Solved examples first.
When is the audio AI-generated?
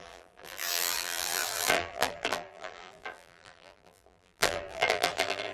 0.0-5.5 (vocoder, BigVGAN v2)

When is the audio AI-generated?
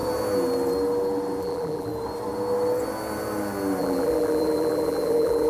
1.4-1.9 (vocoder, BigVGAN v2); 3.8-5.5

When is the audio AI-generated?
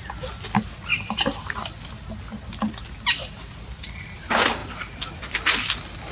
4.6-5.3 (vocoder, BigVGAN v2)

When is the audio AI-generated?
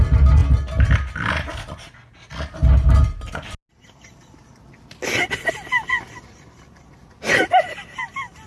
none